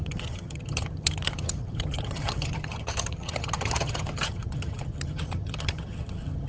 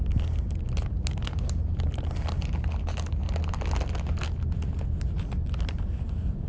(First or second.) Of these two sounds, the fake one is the first